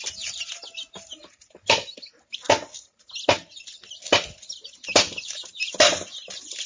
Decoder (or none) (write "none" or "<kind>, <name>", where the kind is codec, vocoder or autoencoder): none